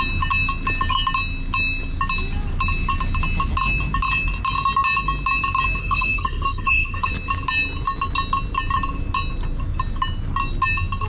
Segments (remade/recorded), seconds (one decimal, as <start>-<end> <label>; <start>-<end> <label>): 0.0-5.8 recorded; 5.8-7.1 remade; 7.1-11.1 recorded